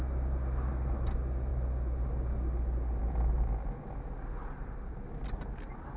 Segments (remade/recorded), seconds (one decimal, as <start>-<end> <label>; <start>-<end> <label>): 0.0-6.0 recorded